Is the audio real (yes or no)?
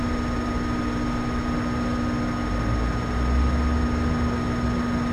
yes